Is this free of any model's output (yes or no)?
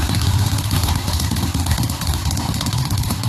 no